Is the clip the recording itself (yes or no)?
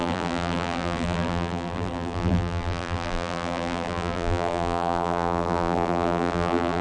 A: no